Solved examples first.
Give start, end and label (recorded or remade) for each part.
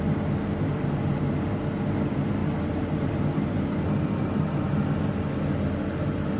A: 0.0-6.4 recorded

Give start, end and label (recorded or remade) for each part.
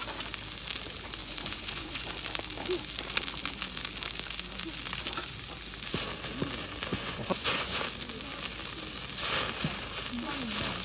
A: 0.0-1.2 recorded; 1.2-2.1 remade; 2.1-6.9 recorded; 6.9-7.8 remade; 7.8-10.8 recorded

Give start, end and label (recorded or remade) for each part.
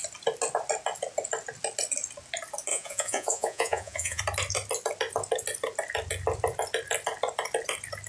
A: 0.0-2.7 recorded; 2.7-4.2 remade; 4.2-8.1 recorded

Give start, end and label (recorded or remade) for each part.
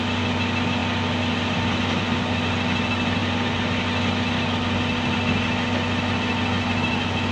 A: 0.0-7.3 recorded